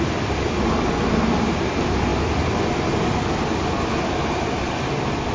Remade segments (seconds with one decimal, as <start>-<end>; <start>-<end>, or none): none